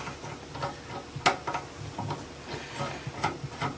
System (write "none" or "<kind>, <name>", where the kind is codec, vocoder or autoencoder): none